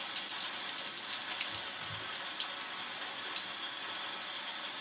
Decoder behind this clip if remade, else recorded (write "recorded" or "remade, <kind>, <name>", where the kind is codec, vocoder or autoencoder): recorded